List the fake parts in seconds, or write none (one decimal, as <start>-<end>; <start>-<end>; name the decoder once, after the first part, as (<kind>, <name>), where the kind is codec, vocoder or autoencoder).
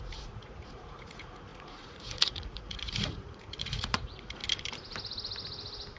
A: 0.0-4.4 (vocoder, Vocos)